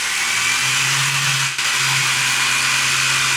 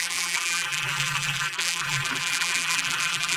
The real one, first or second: first